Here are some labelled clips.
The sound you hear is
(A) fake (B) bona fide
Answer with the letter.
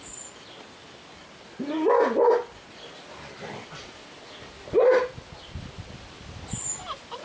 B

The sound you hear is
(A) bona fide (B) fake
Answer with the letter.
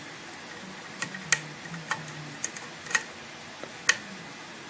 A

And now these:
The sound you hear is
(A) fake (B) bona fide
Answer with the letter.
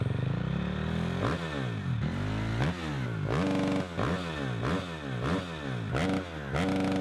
B